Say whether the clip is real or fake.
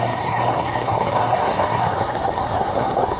fake